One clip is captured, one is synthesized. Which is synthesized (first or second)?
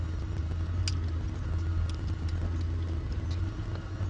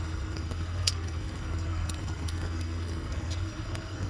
second